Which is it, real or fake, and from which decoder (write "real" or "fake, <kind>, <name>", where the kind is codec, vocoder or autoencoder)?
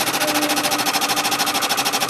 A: real